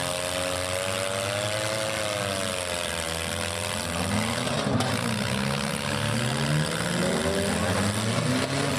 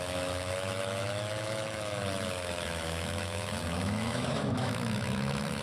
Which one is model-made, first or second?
second